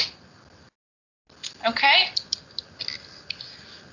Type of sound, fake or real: real